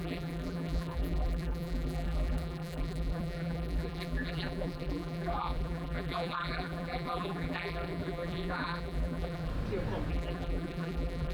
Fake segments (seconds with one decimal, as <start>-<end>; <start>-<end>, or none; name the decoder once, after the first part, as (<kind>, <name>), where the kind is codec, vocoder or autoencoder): 0.0-9.5 (vocoder, BigVGAN v2); 10.1-11.3